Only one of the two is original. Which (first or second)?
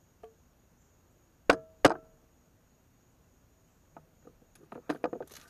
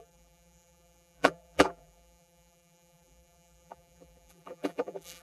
first